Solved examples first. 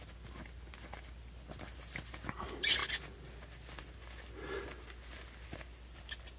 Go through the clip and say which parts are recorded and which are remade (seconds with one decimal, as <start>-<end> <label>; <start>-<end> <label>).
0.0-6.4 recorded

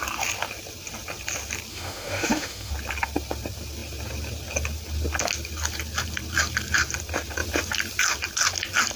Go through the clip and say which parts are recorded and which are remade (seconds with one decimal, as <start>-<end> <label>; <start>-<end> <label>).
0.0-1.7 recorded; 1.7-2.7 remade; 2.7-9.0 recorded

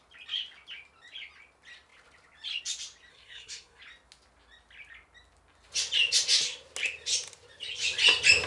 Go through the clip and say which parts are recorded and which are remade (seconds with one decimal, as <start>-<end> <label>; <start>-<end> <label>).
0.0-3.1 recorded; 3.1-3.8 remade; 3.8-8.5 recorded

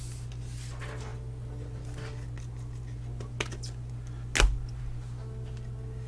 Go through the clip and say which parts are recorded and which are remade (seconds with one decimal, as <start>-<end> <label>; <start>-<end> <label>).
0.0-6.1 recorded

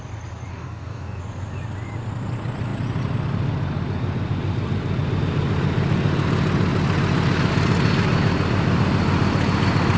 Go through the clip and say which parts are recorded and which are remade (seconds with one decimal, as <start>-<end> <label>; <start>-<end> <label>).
0.0-0.5 recorded; 0.5-1.2 remade; 1.2-10.0 recorded

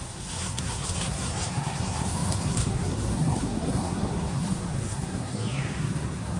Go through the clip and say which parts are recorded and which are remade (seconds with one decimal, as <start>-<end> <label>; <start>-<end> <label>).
0.0-6.4 remade

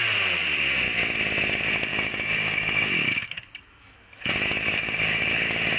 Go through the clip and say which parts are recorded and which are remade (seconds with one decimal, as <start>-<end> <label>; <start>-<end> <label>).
0.0-1.9 recorded; 1.9-5.8 remade

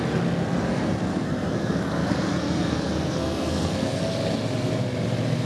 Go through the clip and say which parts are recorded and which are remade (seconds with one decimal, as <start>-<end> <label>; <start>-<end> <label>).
0.0-0.7 recorded; 0.7-4.0 remade; 4.0-5.5 recorded